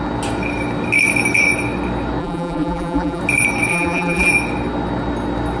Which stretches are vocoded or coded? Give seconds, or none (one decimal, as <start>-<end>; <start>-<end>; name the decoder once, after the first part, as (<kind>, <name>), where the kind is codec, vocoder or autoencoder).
2.2-3.2 (vocoder, BigVGAN v2); 3.7-4.3